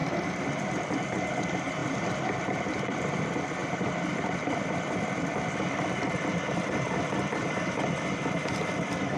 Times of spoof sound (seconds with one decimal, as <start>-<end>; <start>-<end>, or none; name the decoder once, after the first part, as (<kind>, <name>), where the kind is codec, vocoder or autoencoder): 1.8-2.5 (vocoder, BigVGAN v2); 3.6-7.1

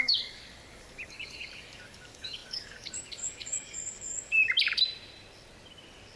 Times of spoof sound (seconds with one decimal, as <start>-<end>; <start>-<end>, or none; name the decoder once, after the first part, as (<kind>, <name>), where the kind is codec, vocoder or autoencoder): 0.0-4.4 (codec, DAC)

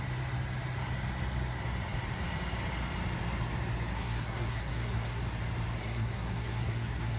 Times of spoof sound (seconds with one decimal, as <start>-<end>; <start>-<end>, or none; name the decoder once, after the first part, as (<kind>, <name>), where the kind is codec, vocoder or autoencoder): 3.9-5.2 (codec, SNAC); 5.8-7.2